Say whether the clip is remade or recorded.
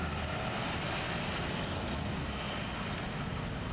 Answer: recorded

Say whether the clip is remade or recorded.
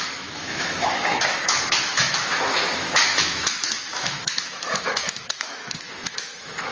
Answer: remade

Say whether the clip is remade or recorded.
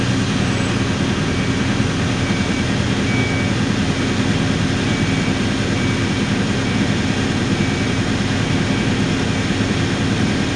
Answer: recorded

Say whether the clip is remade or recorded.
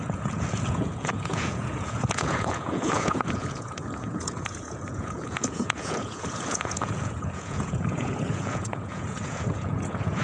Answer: remade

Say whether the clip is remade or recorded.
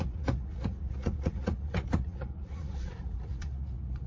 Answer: remade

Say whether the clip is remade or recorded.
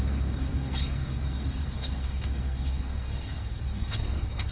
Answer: remade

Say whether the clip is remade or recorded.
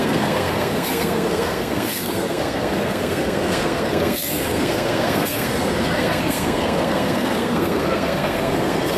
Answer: remade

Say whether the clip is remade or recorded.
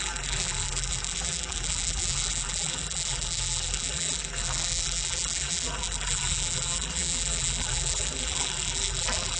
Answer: remade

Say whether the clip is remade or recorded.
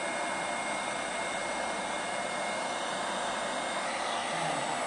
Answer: recorded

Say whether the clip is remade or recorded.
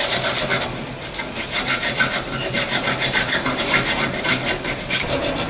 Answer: recorded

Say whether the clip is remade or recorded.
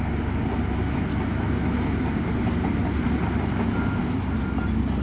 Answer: recorded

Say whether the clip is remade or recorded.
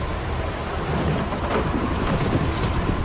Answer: remade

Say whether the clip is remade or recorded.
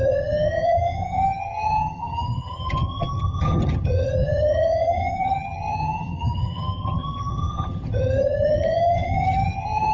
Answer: remade